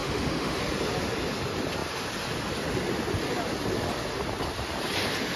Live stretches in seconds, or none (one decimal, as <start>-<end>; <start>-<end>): 0.6-5.4